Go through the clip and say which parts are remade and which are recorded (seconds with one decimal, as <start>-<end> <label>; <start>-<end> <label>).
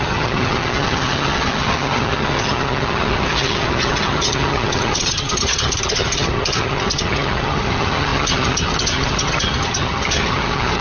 0.0-10.8 remade